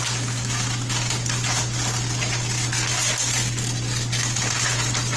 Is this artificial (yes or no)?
no